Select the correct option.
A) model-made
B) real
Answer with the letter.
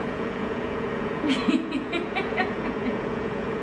A